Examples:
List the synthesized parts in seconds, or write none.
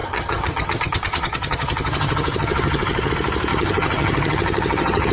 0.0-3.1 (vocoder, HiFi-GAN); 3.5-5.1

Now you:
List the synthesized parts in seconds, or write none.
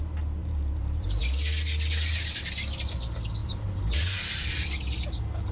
0.4-1.2 (vocoder, BigVGAN v2); 3.4-4.2